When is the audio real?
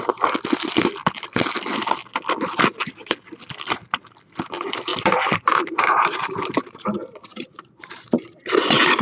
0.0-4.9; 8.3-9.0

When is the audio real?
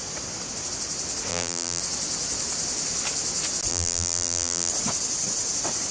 0.0-1.3; 1.8-3.7; 4.7-5.9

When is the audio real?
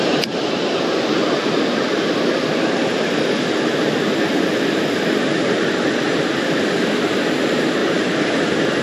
0.0-7.8; 8.4-8.8